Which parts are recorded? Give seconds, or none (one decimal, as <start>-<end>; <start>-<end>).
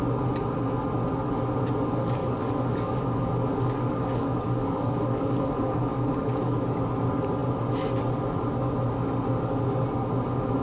0.0-2.2; 6.6-10.6